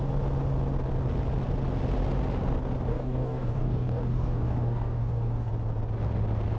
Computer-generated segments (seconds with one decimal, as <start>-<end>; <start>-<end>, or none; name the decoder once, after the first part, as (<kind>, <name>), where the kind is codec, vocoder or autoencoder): 2.9-5.5 (codec, DAC)